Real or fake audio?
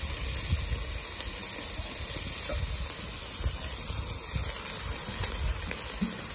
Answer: real